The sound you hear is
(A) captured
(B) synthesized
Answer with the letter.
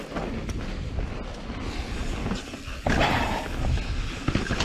A